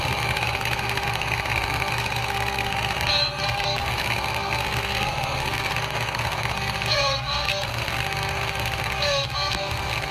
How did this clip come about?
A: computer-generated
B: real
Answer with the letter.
A